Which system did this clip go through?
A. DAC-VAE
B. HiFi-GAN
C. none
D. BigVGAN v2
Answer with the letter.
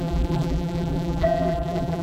D